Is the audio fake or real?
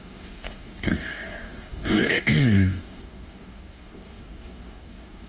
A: fake